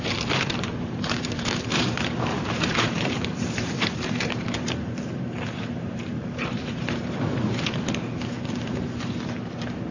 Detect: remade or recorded remade